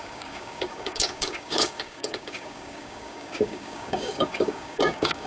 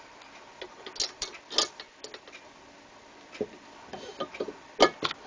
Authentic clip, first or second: second